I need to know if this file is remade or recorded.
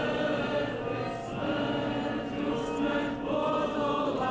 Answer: recorded